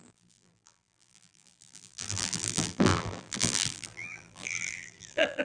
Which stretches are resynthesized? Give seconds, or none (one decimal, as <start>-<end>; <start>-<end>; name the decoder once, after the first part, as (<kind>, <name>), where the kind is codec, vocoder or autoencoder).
0.0-5.4 (vocoder, BigVGAN v2)